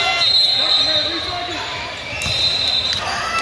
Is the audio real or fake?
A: real